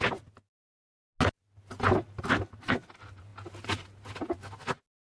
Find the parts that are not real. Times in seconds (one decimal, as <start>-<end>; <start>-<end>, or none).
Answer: none